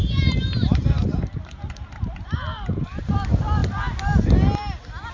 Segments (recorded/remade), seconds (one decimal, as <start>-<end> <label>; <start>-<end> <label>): 0.0-3.1 remade; 3.1-5.1 recorded